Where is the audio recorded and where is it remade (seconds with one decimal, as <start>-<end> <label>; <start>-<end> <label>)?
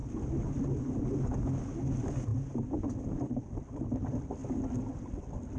0.0-2.3 recorded; 2.3-3.2 remade; 3.2-5.6 recorded